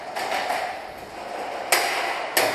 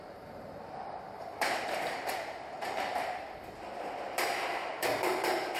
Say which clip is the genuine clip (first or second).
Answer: first